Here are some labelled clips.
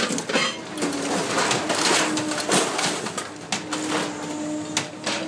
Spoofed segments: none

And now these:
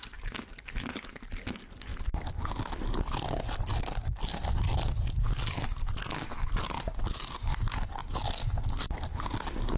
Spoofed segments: none

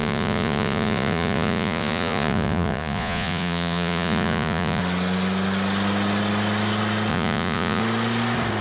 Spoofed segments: 0.0-4.8 (vocoder, Vocos); 7.1-7.8

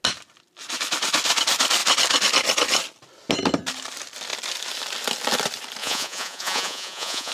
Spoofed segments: 5.8-7.3 (vocoder, Vocos)